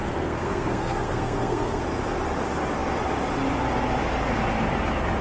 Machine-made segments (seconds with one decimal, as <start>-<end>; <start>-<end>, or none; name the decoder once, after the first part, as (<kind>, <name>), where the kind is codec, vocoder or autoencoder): 0.0-1.8 (codec, SNAC)